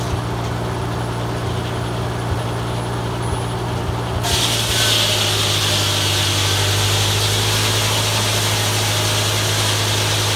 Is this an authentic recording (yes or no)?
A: yes